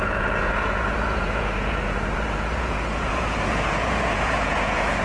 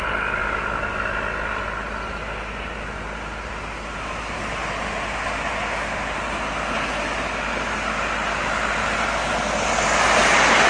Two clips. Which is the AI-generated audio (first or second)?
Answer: first